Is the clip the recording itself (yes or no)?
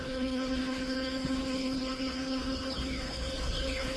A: no